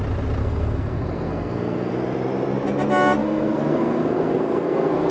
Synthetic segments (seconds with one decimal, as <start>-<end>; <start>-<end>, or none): 0.4-1.9; 3.2-5.1